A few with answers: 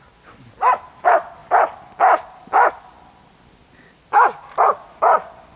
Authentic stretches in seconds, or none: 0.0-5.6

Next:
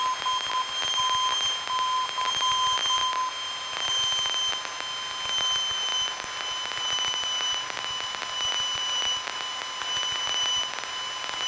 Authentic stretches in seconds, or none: 0.0-11.5

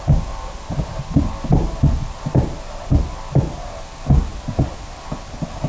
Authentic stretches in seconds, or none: 0.0-5.7

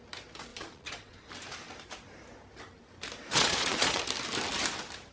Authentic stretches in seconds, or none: 0.0-0.5; 1.3-3.3; 4.0-5.1

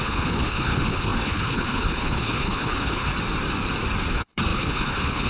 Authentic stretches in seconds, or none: 3.1-4.1

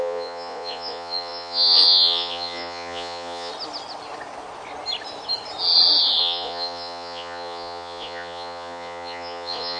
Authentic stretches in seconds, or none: 3.5-6.2